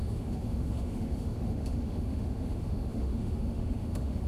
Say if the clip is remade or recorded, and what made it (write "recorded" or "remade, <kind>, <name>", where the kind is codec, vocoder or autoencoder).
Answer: remade, autoencoder, DAC-VAE